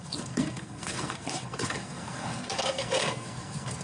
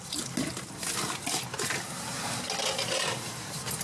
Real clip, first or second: second